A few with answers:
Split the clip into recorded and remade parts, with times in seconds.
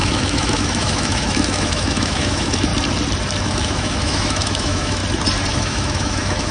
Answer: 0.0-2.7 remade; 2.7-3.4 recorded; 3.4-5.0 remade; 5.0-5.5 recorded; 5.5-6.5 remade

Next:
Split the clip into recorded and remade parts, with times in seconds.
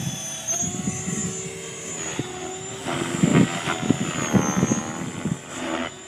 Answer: 0.0-6.1 recorded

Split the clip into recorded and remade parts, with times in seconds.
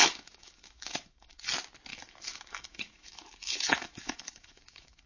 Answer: 0.0-1.5 remade; 1.5-1.9 recorded; 1.9-5.1 remade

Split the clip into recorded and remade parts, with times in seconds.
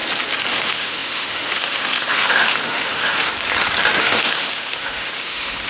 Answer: 0.0-0.5 recorded; 0.5-3.3 remade; 3.3-4.0 recorded; 4.0-5.7 remade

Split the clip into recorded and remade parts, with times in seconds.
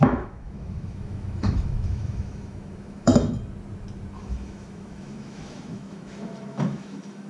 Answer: 0.0-3.1 remade; 3.1-4.2 recorded; 4.2-7.3 remade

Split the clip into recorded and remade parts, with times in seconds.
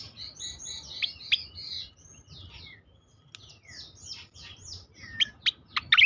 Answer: 0.0-6.1 recorded